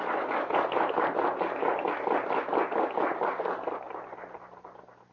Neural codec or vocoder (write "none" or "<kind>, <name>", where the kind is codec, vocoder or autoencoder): none